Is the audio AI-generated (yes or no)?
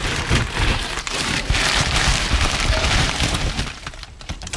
yes